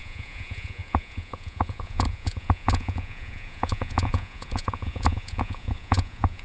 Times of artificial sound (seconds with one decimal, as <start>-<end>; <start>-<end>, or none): 0.0-6.4